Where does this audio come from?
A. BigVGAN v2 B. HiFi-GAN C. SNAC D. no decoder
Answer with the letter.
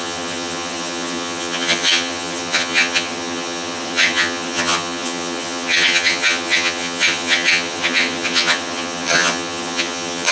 B